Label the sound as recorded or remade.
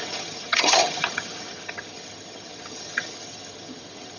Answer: remade